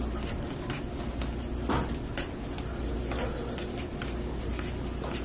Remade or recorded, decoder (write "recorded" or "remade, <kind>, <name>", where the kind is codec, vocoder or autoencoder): recorded